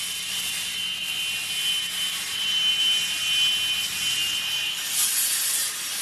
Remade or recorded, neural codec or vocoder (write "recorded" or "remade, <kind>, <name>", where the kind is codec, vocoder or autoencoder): recorded